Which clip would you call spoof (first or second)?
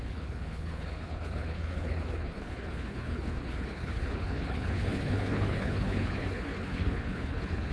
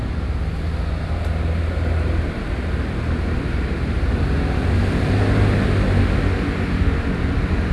first